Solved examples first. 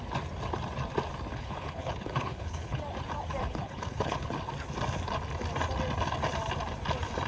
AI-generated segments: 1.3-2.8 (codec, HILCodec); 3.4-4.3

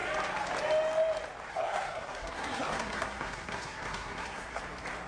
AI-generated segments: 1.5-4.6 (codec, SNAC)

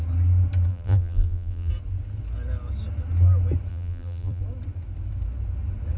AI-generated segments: 0.7-1.7 (vocoder, BigVGAN v2); 3.7-4.4

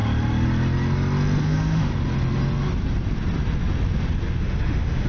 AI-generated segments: 1.4-1.9 (autoencoder, DAC-VAE); 4.4-5.1

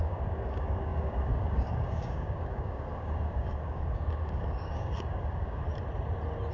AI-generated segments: 0.0-5.6 (codec, DAC)

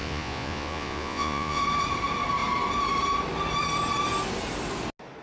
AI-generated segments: 0.0-1.6 (vocoder, Vocos)

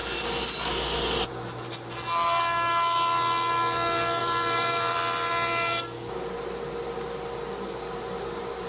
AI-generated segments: 4.2-5.3 (vocoder, BigVGAN v2)

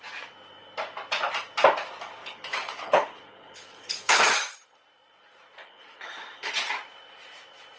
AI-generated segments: 2.2-4.2 (codec, HILCodec); 5.6-6.5